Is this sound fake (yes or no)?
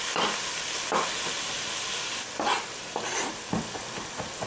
no